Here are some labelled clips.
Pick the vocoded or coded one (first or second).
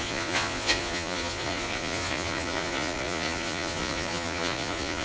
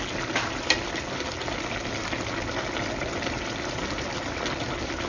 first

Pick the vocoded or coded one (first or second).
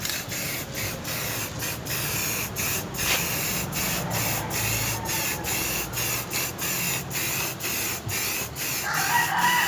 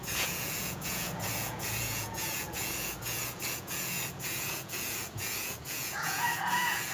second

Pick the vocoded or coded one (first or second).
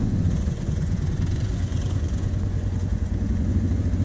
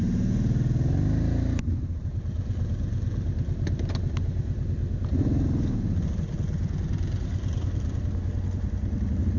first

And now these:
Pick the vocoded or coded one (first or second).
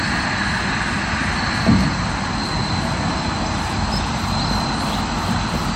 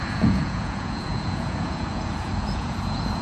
second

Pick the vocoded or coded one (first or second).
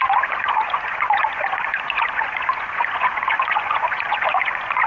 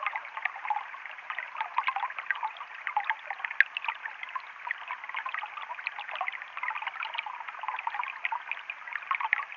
first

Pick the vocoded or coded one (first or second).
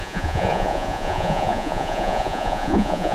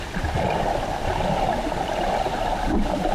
first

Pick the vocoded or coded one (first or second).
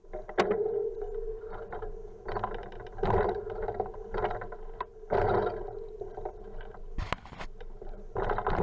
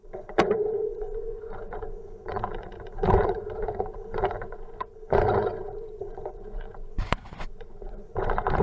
second